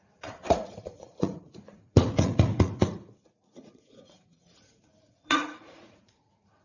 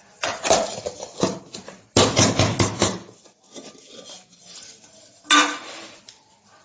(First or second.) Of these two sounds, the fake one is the first